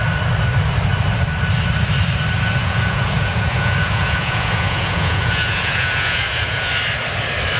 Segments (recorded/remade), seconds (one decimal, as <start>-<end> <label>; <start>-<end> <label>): 0.0-2.6 recorded; 2.6-6.7 remade; 6.7-7.6 recorded

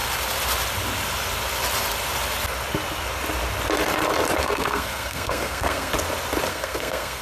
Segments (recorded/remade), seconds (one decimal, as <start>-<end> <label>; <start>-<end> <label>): 0.0-4.4 recorded; 4.4-5.9 remade; 5.9-6.5 recorded; 6.5-7.2 remade

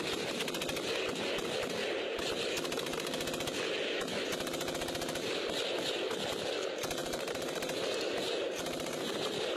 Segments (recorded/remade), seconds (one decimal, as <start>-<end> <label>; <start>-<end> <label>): 0.0-7.0 recorded; 7.0-9.1 remade; 9.1-9.6 recorded